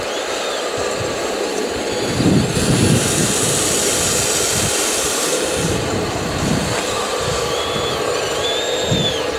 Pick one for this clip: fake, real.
real